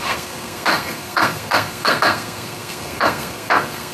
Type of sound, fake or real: fake